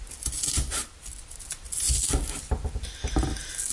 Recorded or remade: recorded